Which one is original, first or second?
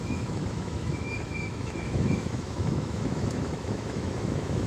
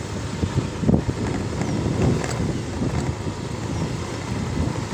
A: second